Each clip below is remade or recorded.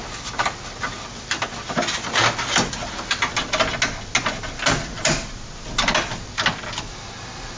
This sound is recorded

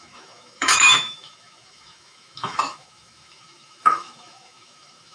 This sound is remade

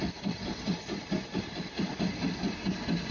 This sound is recorded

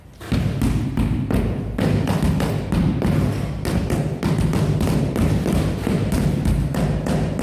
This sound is recorded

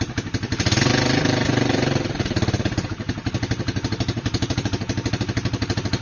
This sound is remade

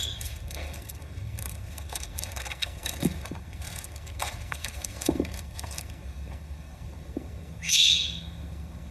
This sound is remade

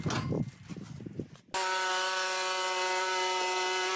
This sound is recorded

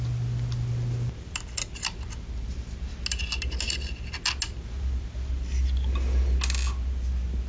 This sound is recorded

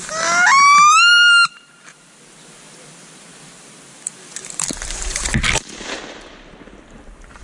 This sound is remade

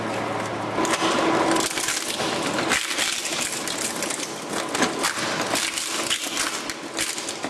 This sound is recorded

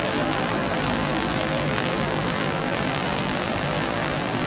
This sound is remade